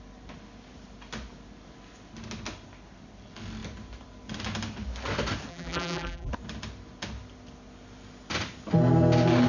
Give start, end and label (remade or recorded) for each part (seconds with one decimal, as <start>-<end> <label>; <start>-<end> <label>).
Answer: 0.0-5.5 recorded; 5.5-6.3 remade; 6.3-9.5 recorded